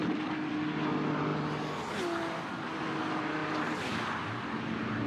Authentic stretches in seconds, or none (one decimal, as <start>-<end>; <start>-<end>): 0.5-5.1